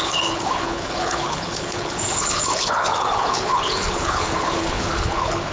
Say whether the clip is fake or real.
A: fake